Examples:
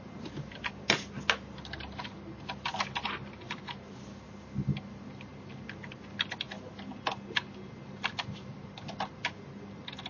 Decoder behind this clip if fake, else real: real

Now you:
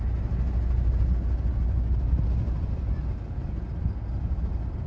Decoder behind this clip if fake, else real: real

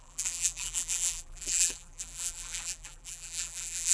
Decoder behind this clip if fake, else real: fake, vocoder, BigVGAN v2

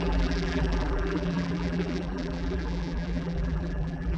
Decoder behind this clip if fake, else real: fake, vocoder, BigVGAN v2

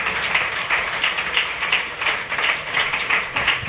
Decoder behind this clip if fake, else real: fake, vocoder, BigVGAN v2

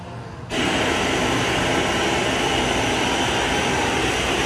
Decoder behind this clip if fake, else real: real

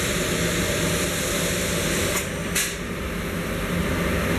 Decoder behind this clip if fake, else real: real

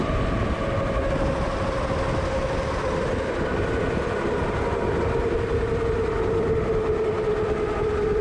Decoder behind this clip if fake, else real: real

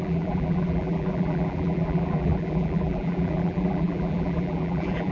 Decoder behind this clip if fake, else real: fake, vocoder, BigVGAN v2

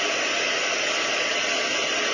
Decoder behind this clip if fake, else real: real